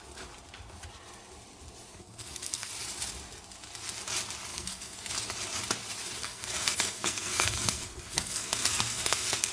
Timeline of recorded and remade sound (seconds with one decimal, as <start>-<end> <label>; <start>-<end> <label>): 0.0-1.9 recorded; 1.9-2.7 remade; 2.7-4.5 recorded; 4.5-5.1 remade; 5.1-6.2 recorded; 6.2-9.5 remade